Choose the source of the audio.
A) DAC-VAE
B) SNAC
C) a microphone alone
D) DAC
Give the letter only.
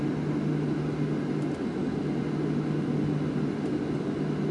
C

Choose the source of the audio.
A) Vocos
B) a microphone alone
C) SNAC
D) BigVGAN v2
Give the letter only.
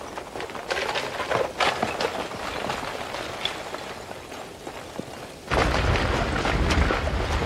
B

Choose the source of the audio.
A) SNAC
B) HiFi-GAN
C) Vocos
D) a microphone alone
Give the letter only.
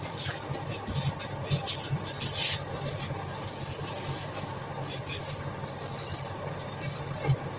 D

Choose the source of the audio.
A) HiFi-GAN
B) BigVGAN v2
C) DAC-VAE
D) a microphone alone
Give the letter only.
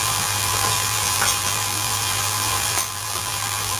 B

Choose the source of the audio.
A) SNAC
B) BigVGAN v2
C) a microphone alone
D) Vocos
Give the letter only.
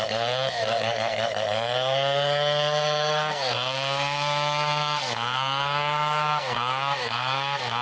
A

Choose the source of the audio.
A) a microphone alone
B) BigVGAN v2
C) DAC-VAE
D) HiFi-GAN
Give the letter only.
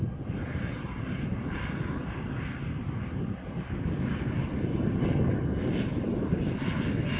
A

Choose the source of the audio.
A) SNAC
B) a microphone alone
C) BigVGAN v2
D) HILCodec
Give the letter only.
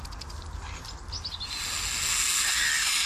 B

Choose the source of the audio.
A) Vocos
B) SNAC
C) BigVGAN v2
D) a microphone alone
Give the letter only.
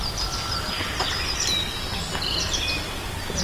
D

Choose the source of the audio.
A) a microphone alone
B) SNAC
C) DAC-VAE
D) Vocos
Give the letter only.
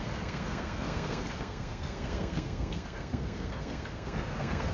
B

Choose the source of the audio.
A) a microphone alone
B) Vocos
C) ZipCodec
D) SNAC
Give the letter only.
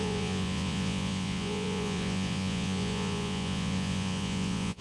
B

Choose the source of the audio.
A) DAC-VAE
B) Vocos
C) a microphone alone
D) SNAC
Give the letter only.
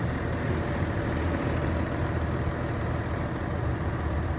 C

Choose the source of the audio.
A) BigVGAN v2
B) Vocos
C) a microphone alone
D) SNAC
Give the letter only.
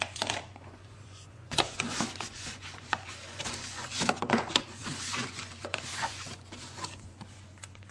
B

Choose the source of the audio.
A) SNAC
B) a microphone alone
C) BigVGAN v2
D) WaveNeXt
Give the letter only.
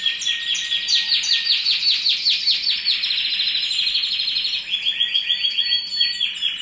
B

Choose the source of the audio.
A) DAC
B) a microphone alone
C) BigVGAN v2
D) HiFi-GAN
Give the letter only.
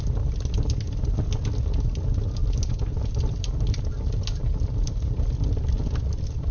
B